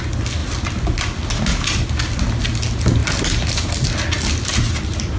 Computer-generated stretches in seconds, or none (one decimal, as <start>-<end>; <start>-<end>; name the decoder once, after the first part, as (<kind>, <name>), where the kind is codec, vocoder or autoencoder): none